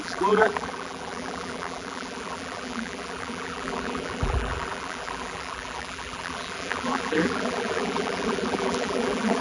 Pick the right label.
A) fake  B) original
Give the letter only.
A